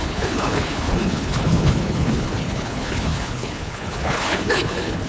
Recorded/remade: remade